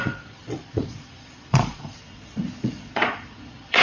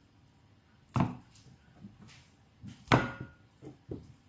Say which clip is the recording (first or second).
second